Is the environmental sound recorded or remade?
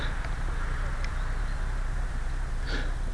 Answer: recorded